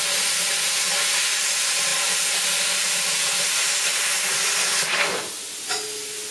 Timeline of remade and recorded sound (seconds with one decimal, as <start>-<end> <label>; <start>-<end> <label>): 0.0-6.3 recorded